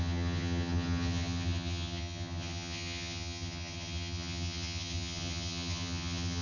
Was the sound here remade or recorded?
remade